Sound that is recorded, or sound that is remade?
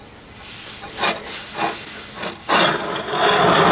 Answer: recorded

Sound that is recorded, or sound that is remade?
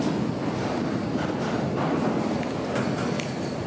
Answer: recorded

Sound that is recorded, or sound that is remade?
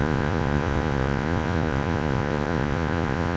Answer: remade